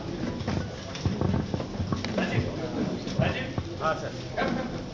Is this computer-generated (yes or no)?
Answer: no